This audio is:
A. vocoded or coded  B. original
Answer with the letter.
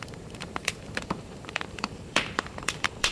A